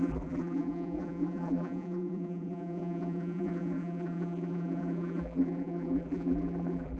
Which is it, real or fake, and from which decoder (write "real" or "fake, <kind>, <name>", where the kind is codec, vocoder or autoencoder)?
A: fake, vocoder, BigVGAN v2